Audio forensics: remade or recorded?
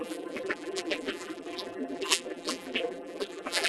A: remade